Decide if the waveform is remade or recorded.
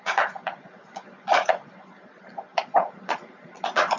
remade